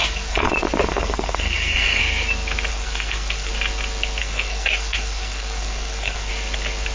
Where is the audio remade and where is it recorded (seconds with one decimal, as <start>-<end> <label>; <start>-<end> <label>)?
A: 0.0-0.5 remade; 0.5-0.9 recorded; 0.9-2.0 remade; 2.0-2.7 recorded; 2.7-3.5 remade; 3.5-4.2 recorded; 4.2-6.3 remade; 6.3-6.9 recorded